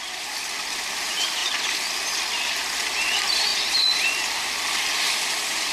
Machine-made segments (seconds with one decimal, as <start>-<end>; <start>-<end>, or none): 3.5-4.1

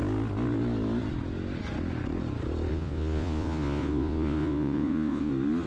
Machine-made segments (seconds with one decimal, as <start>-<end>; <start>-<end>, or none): 2.7-5.3

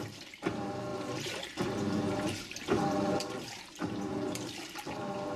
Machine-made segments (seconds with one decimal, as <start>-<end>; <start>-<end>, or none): 0.0-5.4

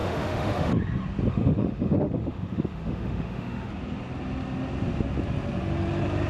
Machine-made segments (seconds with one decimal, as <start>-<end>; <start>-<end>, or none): 0.0-0.7; 1.3-3.7

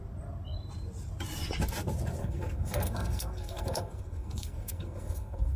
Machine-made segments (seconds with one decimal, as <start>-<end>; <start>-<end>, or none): 2.2-5.6

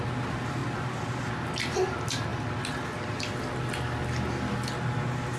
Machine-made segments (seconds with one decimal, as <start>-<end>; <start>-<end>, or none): none

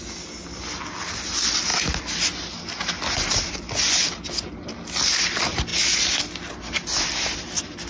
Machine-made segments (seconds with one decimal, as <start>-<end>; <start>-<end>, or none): none